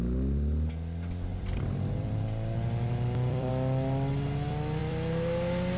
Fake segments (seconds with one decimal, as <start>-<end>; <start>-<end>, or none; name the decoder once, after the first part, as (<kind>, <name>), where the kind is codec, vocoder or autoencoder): 1.3-3.5 (vocoder, BigVGAN v2); 4.8-5.8